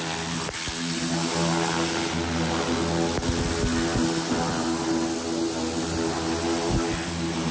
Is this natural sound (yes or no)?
yes